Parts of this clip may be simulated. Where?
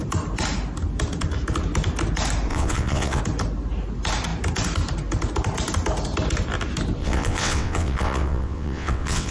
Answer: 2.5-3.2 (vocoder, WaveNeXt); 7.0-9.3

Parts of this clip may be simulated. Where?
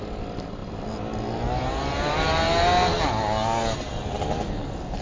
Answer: none